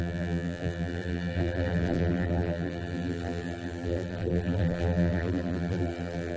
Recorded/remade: remade